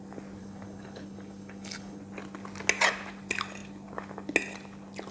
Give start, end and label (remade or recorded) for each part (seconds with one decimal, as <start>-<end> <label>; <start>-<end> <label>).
0.0-0.4 recorded; 0.4-2.0 remade; 2.0-5.1 recorded